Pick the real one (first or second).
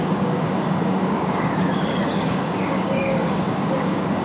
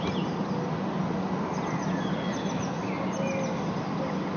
second